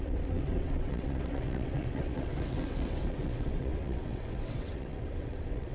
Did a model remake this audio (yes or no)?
yes